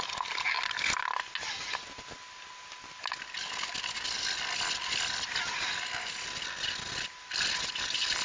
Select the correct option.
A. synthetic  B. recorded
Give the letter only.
B